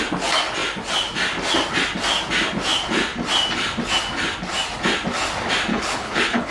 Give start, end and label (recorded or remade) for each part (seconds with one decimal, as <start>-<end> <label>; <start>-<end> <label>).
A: 0.0-5.7 recorded; 5.7-6.5 remade